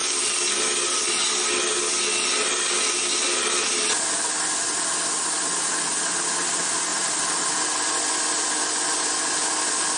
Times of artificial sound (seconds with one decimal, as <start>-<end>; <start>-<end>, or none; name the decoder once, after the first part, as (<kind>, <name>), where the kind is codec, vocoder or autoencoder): none

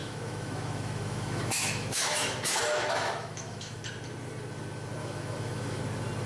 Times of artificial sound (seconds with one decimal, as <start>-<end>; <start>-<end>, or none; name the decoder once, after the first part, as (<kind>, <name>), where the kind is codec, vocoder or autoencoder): 0.0-3.8 (autoencoder, DAC-VAE); 5.0-5.8

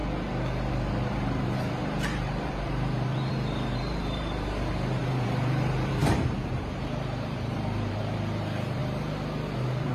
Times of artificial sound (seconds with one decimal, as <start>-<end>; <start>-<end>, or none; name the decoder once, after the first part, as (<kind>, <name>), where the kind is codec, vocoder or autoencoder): 0.7-8.8 (vocoder, BigVGAN v2)

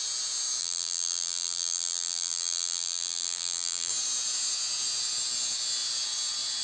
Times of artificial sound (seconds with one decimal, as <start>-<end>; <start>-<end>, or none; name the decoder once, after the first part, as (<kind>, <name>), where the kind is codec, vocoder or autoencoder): 0.6-3.9 (vocoder, BigVGAN v2)

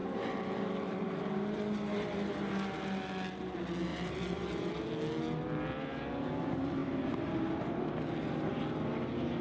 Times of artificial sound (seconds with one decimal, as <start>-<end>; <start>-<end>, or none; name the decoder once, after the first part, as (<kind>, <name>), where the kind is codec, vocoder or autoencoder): 0.0-2.3 (vocoder, BigVGAN v2); 3.9-4.7; 6.8-7.8

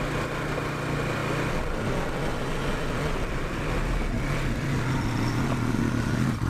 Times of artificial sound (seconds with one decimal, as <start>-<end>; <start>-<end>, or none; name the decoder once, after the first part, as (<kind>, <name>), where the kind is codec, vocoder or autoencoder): none